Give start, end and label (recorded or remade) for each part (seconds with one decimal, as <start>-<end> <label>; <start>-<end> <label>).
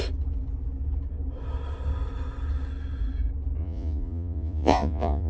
0.0-3.6 recorded; 3.6-5.3 remade